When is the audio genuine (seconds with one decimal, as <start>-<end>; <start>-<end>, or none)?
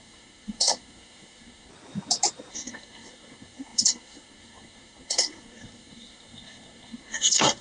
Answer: 1.7-2.5